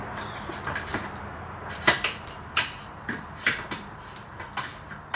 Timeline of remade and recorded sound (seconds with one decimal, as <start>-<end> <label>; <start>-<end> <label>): 0.0-0.9 recorded; 0.9-4.0 remade; 4.0-5.2 recorded